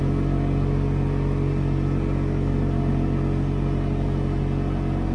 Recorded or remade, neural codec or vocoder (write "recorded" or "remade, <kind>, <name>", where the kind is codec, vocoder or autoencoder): recorded